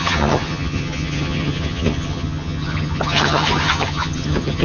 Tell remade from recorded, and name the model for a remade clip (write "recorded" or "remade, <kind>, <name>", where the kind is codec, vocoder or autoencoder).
remade, vocoder, HiFi-GAN